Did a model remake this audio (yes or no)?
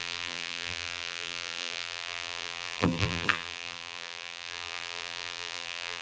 yes